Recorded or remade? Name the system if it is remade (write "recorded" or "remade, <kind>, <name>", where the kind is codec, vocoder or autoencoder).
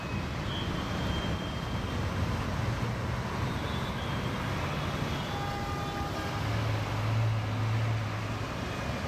recorded